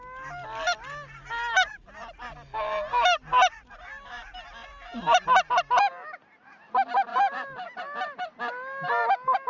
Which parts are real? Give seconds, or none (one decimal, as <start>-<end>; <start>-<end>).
0.0-9.5